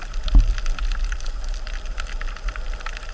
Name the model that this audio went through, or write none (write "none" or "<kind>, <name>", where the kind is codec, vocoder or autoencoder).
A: none